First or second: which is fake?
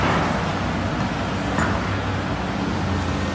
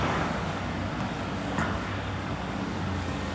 second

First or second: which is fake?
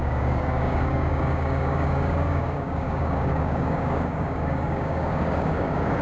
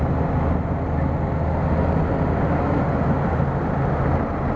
first